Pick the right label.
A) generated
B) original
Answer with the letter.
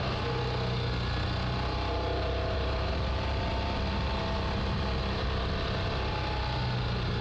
B